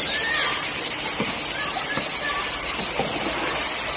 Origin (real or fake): real